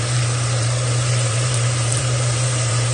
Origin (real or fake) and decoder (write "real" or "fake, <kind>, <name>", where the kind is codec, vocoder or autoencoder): fake, vocoder, BigVGAN v2